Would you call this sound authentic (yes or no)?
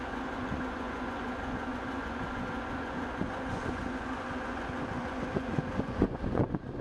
no